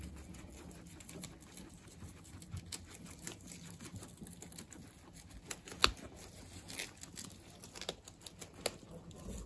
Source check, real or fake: real